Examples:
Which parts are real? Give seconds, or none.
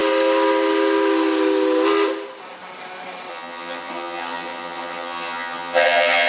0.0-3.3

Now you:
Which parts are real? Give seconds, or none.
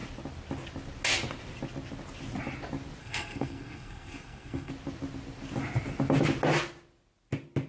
0.0-3.0; 4.7-7.7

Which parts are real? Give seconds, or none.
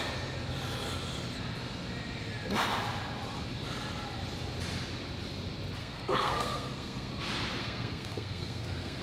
0.0-5.8; 7.1-7.6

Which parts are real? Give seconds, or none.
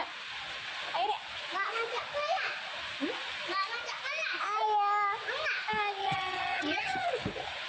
0.0-6.0; 7.1-7.7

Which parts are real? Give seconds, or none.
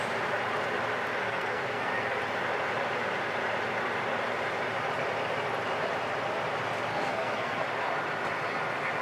0.0-1.2; 2.2-6.9; 7.6-9.0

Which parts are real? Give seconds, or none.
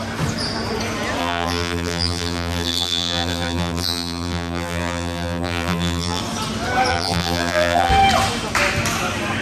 0.0-1.2; 6.2-6.9; 7.9-9.4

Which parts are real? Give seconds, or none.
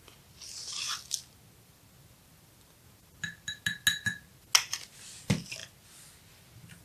0.0-6.8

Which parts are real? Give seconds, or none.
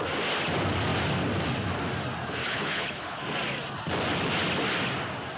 0.0-2.4; 3.2-5.4